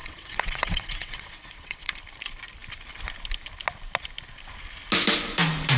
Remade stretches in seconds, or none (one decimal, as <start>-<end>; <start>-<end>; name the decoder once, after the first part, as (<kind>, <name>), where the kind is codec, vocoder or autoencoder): 0.0-1.9 (vocoder, WaveNeXt)

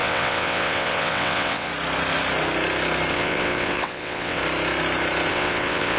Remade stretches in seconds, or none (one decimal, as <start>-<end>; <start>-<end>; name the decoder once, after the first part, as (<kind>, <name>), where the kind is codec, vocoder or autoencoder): 0.0-1.7 (vocoder, WaveNeXt); 3.1-4.4; 5.3-6.0

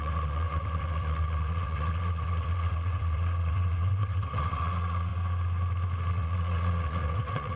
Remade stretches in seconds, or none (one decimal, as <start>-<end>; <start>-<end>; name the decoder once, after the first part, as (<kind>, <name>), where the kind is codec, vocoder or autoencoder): 0.0-5.1 (vocoder, WaveNeXt); 6.1-7.6

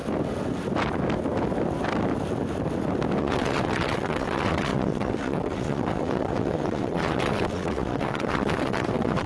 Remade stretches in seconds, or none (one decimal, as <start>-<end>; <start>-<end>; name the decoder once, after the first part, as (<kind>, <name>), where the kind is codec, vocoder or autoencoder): 3.2-9.3 (vocoder, WaveNeXt)

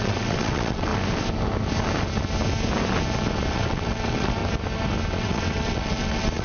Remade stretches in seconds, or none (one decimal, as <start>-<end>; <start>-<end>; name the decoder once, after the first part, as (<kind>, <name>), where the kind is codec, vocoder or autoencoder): 0.0-0.9 (vocoder, WaveNeXt); 3.5-4.4; 5.1-6.4

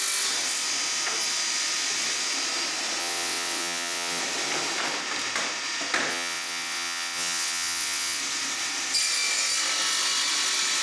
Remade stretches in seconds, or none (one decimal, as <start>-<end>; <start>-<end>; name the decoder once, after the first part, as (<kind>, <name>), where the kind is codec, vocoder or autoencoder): 3.0-4.2 (vocoder, WaveNeXt); 6.1-8.2

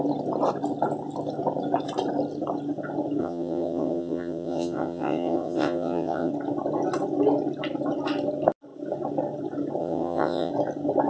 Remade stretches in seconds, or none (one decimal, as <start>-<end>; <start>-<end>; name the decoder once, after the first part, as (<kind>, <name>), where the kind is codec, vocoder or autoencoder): 3.2-6.3 (vocoder, WaveNeXt); 9.8-10.5